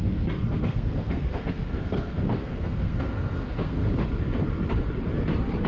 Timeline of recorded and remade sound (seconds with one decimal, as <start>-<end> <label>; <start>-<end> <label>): 0.0-3.8 remade; 3.8-5.7 recorded